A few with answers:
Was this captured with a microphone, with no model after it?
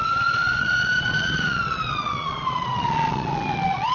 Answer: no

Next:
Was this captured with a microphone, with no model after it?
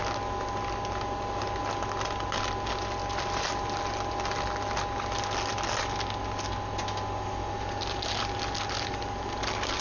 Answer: yes